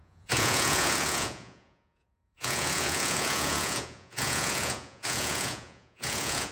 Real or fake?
fake